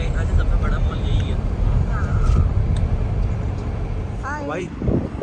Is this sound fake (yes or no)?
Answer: yes